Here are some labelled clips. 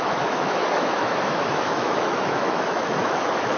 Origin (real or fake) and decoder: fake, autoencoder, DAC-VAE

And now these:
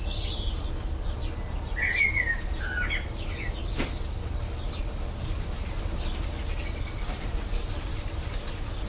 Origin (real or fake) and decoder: real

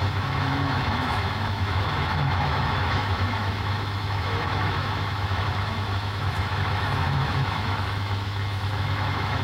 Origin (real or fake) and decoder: fake, autoencoder, DAC-VAE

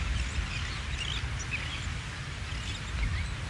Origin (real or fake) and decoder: real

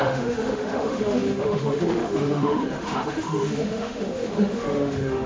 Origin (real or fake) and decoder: fake, autoencoder, DAC-VAE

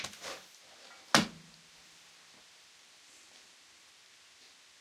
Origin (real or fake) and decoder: real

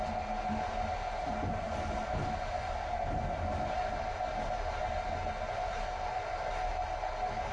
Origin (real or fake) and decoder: real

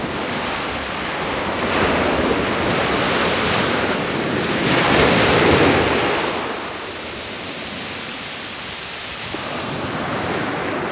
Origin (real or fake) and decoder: real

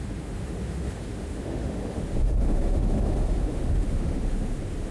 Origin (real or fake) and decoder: fake, autoencoder, DAC-VAE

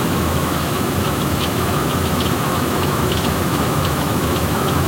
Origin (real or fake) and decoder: fake, autoencoder, DAC-VAE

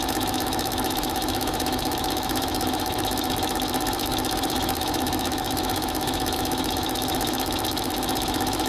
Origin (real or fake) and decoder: fake, autoencoder, DAC-VAE